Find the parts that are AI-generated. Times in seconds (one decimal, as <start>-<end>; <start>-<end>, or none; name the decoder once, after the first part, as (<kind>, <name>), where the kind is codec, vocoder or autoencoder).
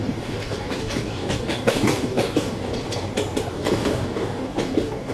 0.0-2.7 (codec, DAC); 3.5-5.1